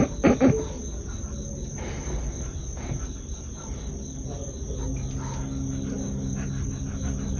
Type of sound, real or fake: real